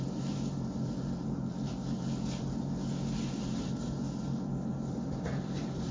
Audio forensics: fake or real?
fake